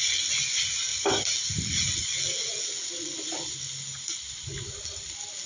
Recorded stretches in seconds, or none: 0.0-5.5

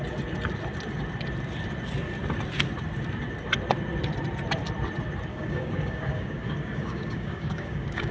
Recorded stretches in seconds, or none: 0.0-5.3

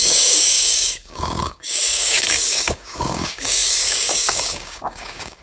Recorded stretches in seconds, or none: none

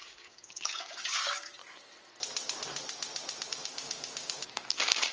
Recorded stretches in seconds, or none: 1.6-3.5

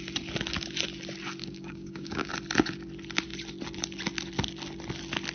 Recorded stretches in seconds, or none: 0.0-1.4; 2.3-5.3

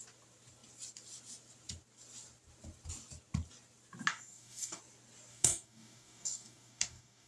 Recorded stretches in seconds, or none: 0.0-4.1; 4.8-5.3